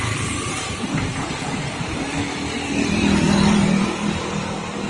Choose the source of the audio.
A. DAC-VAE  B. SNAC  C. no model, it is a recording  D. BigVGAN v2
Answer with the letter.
D